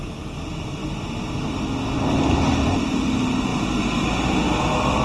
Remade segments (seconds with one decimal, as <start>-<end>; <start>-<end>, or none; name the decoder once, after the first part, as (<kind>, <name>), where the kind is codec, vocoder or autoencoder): none